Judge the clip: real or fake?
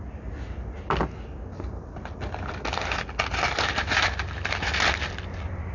real